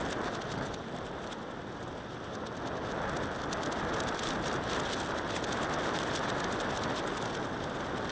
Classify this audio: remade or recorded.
recorded